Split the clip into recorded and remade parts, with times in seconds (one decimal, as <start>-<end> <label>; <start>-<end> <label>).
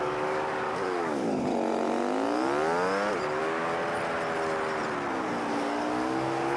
0.0-1.5 remade; 1.5-3.4 recorded; 3.4-3.8 remade; 3.8-5.5 recorded; 5.5-6.6 remade